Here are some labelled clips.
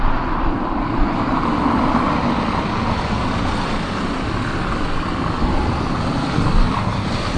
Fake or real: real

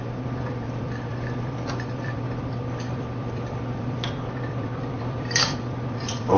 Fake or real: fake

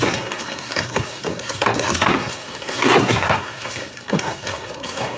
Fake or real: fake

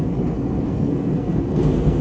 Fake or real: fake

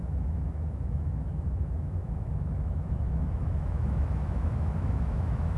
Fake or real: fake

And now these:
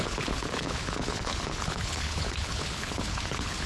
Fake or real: fake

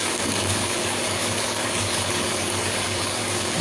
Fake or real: fake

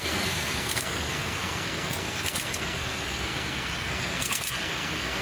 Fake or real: fake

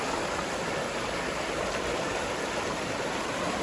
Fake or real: real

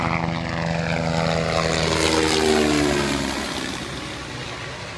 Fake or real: real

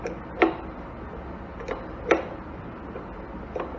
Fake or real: real